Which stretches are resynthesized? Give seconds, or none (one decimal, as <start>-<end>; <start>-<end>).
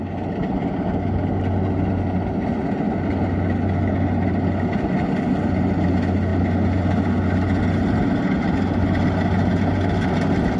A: none